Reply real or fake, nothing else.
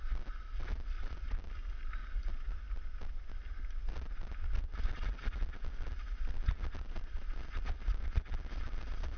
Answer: real